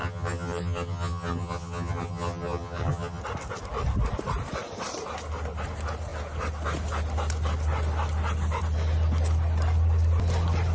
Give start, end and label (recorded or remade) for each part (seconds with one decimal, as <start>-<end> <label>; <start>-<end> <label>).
0.0-3.2 remade; 3.2-10.7 recorded